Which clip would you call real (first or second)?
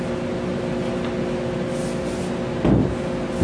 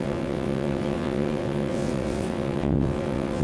first